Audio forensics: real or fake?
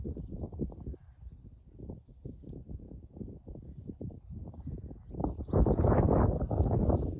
real